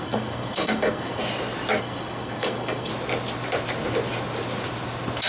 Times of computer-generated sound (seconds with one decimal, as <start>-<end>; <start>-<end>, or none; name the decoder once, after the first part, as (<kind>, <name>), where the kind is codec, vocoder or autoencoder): 0.0-1.2 (codec, SNAC); 1.8-2.9